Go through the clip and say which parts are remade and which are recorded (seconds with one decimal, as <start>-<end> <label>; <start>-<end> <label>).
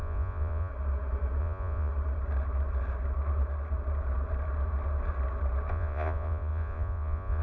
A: 0.0-0.7 remade; 0.7-1.4 recorded; 1.4-1.9 remade; 1.9-5.7 recorded; 5.7-7.4 remade